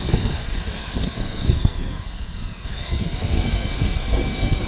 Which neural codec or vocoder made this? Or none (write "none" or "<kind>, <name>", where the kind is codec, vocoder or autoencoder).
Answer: codec, SNAC